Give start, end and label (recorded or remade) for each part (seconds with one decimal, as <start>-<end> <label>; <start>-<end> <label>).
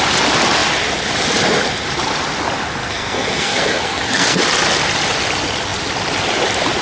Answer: 0.0-2.8 recorded; 2.8-4.4 remade; 4.4-6.8 recorded